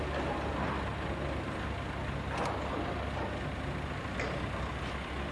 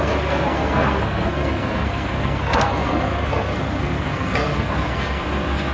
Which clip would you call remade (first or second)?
second